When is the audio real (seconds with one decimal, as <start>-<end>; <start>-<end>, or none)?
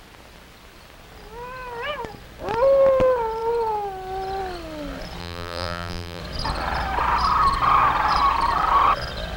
0.0-5.2; 6.2-9.4